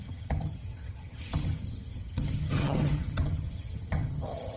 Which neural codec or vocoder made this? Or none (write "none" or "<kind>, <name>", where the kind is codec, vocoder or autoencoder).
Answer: vocoder, HiFi-GAN